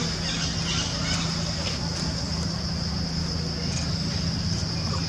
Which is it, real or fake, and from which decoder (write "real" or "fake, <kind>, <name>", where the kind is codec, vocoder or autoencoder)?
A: real